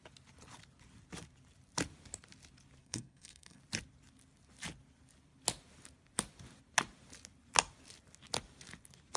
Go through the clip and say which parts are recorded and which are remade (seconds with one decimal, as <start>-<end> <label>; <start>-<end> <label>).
0.0-2.8 recorded; 2.8-3.6 remade; 3.6-9.2 recorded